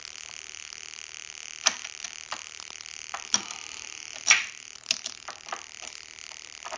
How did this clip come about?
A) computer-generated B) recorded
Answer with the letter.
B